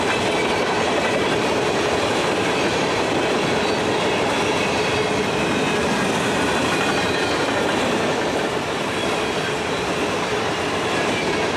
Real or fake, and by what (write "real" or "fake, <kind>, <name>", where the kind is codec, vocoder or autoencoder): fake, vocoder, BigVGAN v2